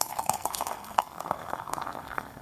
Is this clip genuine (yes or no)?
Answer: no